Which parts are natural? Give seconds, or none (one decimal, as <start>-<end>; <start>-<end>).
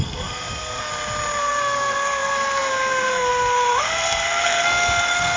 0.9-1.4